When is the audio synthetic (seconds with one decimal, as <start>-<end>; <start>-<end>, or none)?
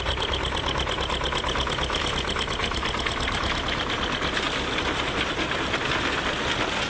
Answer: 2.6-6.5